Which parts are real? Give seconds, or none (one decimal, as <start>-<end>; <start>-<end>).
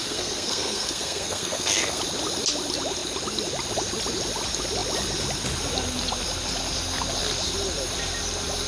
2.0-8.7